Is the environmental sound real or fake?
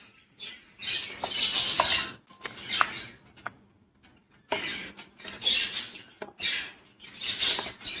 real